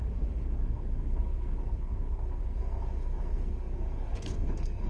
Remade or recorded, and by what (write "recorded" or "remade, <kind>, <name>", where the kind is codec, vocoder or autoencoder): remade, codec, SNAC